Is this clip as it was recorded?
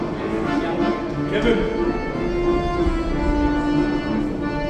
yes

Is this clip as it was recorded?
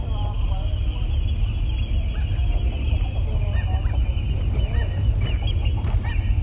yes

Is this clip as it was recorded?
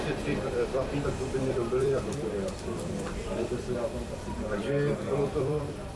no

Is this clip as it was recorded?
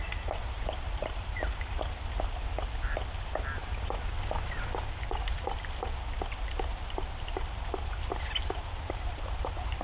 yes